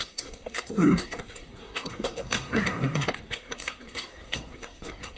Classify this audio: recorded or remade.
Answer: remade